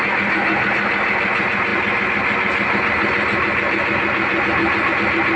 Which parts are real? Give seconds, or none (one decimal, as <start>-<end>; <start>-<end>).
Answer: 0.0-5.4